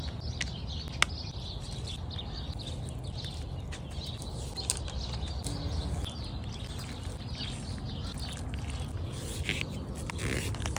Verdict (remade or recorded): recorded